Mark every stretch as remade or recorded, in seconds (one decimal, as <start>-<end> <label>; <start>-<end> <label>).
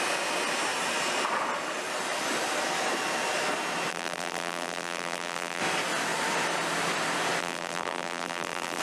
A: 0.0-3.9 recorded; 3.9-5.6 remade; 5.6-7.4 recorded; 7.4-8.8 remade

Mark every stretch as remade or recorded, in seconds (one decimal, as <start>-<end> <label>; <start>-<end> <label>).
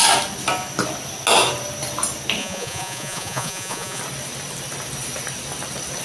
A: 0.0-2.4 recorded; 2.4-4.0 remade; 4.0-6.0 recorded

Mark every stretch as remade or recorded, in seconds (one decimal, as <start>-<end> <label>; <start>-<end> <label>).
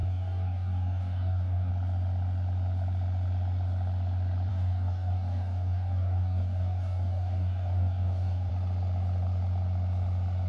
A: 0.0-1.7 remade; 1.7-4.5 recorded; 4.5-8.5 remade; 8.5-10.5 recorded